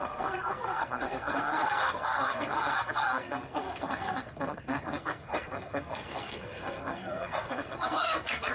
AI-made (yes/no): yes